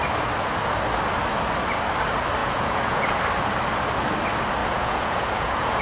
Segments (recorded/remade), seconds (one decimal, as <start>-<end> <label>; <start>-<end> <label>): 0.0-2.4 recorded; 2.4-3.2 remade; 3.2-4.6 recorded; 4.6-5.8 remade